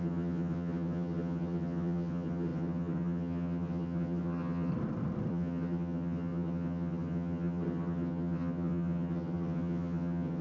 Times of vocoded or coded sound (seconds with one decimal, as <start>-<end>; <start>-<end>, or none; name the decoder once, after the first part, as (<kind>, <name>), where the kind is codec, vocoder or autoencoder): 0.0-4.7 (vocoder, HiFi-GAN); 5.3-10.4